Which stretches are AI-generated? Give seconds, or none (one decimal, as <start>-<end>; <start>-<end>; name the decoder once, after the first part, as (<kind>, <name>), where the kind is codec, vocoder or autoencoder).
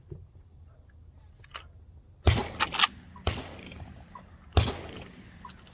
none